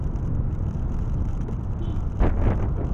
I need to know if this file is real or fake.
real